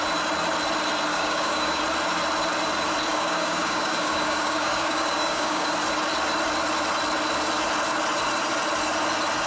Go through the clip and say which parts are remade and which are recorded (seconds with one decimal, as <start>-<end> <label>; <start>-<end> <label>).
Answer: 0.0-1.1 recorded; 1.1-1.8 remade; 1.8-3.1 recorded; 3.1-5.7 remade; 5.7-9.5 recorded